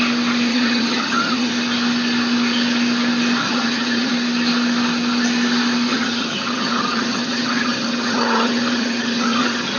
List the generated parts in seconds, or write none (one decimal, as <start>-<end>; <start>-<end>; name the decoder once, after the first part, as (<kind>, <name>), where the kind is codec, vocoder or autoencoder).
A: 0.5-1.5 (vocoder, HiFi-GAN); 3.4-4.1; 5.9-9.8